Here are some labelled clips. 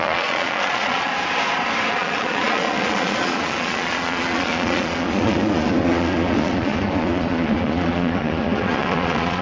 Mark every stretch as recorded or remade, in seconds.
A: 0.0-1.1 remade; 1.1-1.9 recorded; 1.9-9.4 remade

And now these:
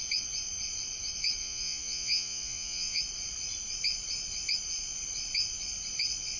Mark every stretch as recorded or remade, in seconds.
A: 0.0-1.4 recorded; 1.4-3.0 remade; 3.0-6.4 recorded